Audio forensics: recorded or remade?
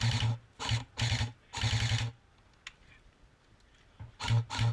recorded